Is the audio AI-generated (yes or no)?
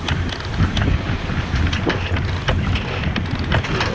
no